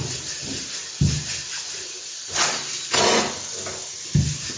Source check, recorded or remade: recorded